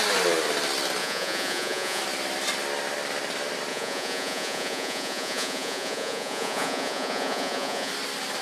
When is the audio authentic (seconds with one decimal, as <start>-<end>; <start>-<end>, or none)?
0.0-1.0; 2.0-3.7; 7.9-8.4